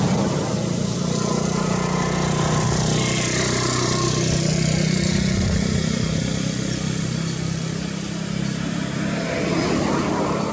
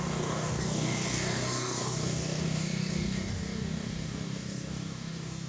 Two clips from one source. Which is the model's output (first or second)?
second